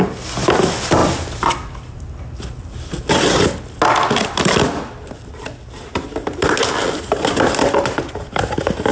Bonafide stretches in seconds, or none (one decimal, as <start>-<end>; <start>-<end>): 0.0-8.9